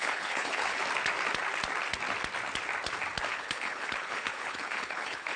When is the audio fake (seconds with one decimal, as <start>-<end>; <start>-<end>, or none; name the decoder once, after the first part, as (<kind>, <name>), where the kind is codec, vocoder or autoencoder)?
0.0-0.8 (codec, HILCodec); 3.3-5.4